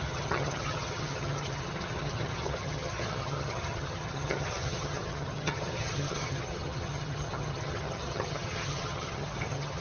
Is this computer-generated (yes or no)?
yes